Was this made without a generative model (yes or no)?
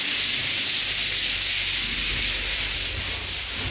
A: yes